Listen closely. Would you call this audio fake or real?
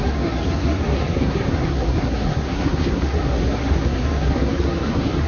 fake